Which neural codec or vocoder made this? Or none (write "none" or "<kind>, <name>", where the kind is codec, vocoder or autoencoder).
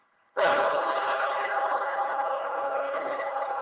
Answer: codec, HILCodec